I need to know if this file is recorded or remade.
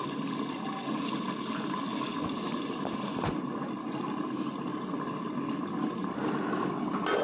recorded